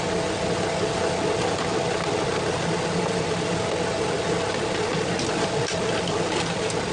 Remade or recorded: recorded